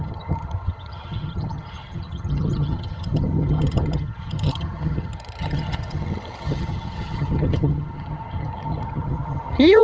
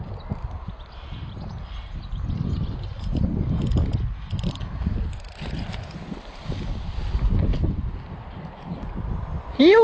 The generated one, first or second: first